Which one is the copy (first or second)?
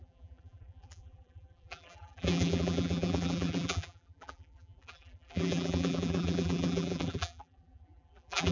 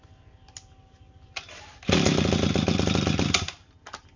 first